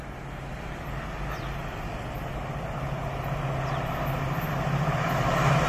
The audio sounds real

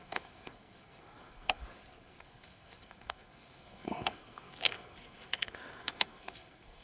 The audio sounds fake